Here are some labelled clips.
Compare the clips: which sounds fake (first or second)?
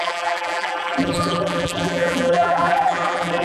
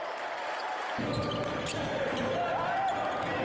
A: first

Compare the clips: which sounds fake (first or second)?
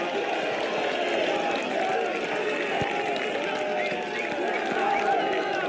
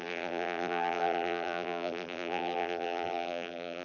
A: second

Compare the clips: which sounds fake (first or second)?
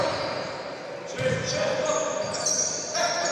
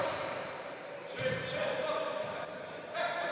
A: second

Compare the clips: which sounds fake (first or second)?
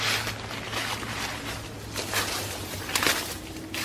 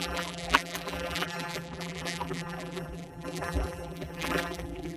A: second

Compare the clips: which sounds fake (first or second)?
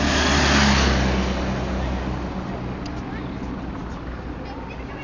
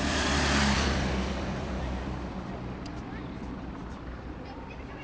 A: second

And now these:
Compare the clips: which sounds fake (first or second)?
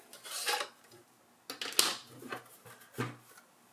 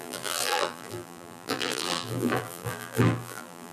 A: second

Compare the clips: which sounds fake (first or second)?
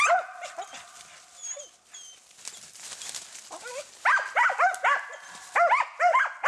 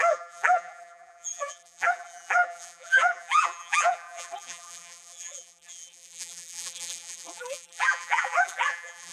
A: second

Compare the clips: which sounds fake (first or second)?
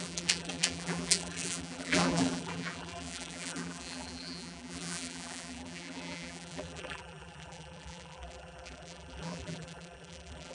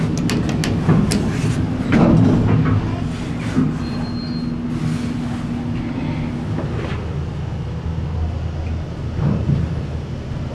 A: first